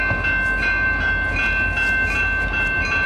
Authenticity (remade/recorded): recorded